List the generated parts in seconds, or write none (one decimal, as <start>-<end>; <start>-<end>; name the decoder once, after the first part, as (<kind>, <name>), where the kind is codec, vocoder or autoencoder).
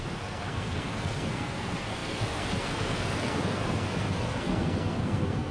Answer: 0.0-5.5 (codec, SNAC)